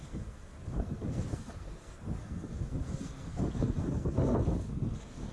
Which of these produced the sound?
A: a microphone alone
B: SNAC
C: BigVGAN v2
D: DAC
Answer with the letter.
B